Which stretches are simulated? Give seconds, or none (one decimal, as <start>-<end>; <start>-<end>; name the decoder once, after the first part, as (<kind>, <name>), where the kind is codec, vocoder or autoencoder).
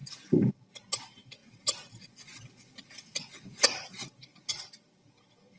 1.4-4.5 (vocoder, BigVGAN v2)